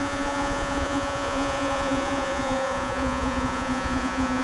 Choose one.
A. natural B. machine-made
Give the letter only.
B